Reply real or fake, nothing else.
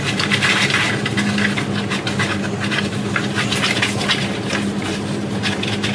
real